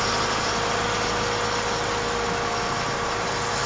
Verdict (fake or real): real